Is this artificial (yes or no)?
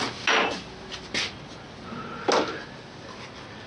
no